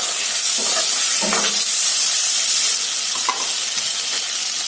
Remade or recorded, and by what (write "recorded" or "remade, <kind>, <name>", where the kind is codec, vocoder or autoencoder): recorded